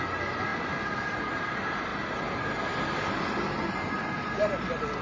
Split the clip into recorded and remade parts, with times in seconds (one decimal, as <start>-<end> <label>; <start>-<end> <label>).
0.0-5.0 recorded